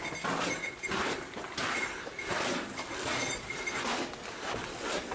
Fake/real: real